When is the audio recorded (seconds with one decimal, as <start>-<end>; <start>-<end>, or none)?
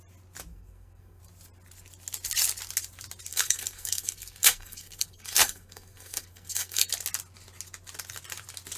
0.0-0.5; 1.2-3.3; 6.9-8.8